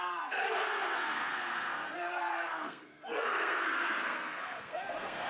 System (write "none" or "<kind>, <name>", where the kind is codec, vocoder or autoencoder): codec, SNAC